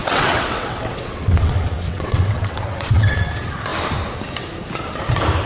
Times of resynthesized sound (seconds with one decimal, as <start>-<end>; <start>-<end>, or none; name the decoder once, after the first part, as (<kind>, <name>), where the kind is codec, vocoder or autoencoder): 0.0-3.3 (vocoder, WaveNeXt)